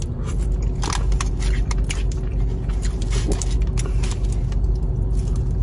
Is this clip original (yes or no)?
yes